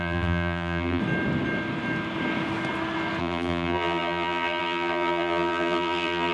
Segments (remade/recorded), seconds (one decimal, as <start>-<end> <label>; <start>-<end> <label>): 0.0-1.0 remade; 1.0-3.2 recorded; 3.2-6.3 remade